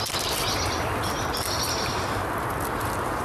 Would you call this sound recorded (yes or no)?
yes